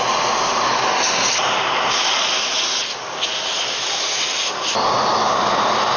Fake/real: real